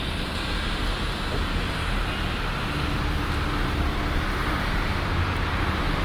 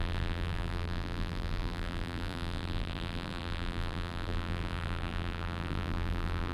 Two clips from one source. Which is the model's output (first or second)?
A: second